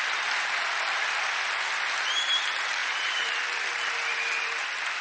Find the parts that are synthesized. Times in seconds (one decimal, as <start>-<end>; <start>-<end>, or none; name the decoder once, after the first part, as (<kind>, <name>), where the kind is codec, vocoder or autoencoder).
2.8-3.3 (vocoder, Vocos)